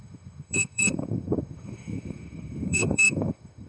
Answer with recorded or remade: remade